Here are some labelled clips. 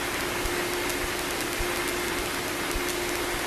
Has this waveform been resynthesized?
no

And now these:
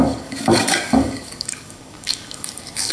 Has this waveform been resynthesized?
yes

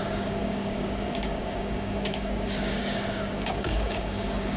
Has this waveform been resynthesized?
yes